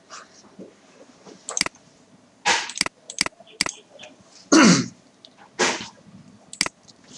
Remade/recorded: recorded